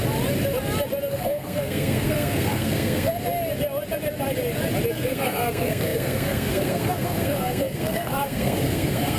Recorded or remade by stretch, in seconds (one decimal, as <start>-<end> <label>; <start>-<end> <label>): 0.0-1.1 recorded; 1.1-3.1 remade; 3.1-4.9 recorded; 4.9-9.2 remade